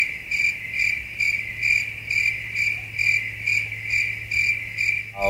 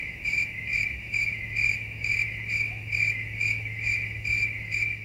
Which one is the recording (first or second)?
first